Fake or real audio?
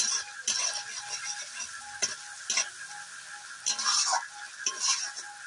real